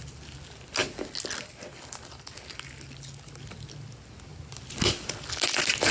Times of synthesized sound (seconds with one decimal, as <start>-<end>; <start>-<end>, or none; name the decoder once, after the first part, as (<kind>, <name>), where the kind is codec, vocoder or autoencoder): none